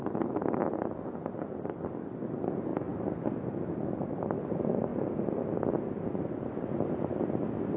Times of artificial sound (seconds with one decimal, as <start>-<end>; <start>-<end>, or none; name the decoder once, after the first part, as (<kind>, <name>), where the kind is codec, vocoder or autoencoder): none